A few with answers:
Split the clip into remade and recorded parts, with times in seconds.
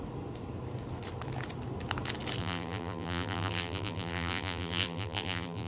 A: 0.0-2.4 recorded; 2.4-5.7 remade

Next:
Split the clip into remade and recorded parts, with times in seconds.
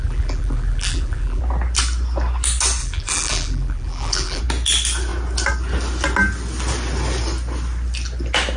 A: 0.0-1.4 remade; 1.4-2.8 recorded; 2.8-4.4 remade; 4.4-8.6 recorded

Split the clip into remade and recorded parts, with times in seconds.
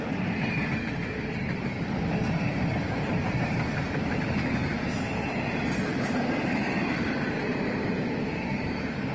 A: 0.0-9.1 remade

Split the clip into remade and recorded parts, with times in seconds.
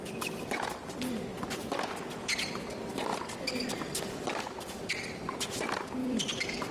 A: 0.0-1.3 remade; 1.3-2.7 recorded; 2.7-6.7 remade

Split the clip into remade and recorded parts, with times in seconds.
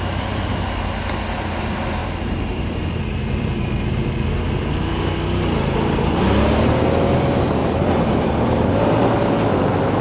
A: 0.0-2.0 recorded; 2.0-3.0 remade; 3.0-7.6 recorded; 7.6-9.2 remade; 9.2-10.0 recorded